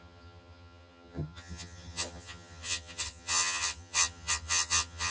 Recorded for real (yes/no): no